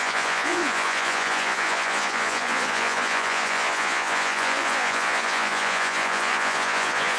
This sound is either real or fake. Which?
fake